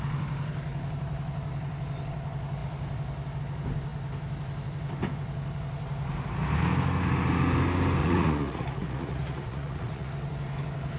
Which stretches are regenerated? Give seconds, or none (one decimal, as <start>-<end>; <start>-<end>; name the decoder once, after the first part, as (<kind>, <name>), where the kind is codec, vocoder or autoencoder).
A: 8.0-10.1 (vocoder, Vocos)